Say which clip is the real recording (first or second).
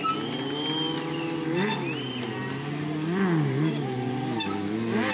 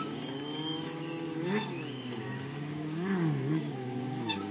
first